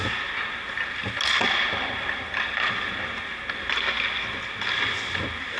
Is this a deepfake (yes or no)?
no